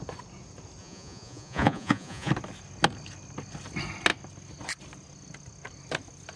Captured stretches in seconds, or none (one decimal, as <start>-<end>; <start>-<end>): 0.0-0.8; 2.3-6.4